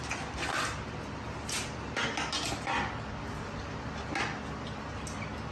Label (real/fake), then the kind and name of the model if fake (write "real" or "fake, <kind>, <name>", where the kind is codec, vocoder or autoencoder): real